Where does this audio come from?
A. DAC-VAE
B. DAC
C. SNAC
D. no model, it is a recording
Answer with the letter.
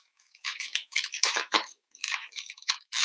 A